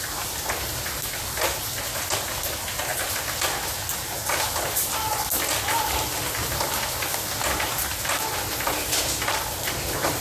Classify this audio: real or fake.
real